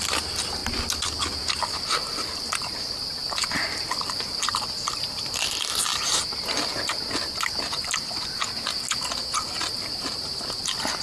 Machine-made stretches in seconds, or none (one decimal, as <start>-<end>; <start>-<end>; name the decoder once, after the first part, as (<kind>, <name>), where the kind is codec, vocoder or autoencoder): 0.0-0.6 (vocoder, BigVGAN v2); 1.4-5.9